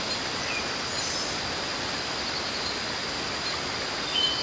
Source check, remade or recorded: recorded